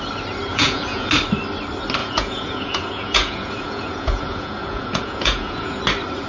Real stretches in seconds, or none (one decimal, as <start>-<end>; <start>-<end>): 0.0-0.5; 1.1-2.0; 5.8-6.3